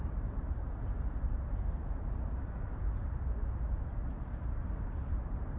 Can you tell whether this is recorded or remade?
remade